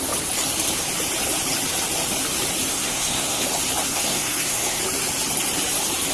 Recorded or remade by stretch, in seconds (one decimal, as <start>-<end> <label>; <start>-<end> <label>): 0.0-2.7 recorded; 2.7-3.4 remade; 3.4-3.9 recorded; 3.9-4.8 remade; 4.8-6.1 recorded